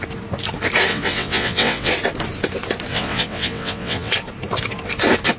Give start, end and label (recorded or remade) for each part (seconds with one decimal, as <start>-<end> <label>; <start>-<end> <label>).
0.0-0.9 recorded; 0.9-1.9 remade; 1.9-2.9 recorded; 2.9-4.1 remade; 4.1-5.4 recorded